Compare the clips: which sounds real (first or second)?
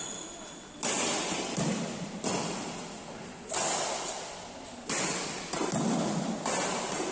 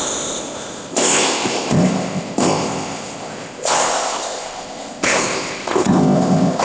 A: first